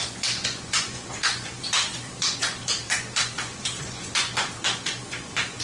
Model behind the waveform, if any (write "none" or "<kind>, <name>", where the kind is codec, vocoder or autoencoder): vocoder, Vocos